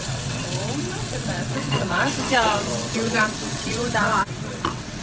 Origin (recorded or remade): remade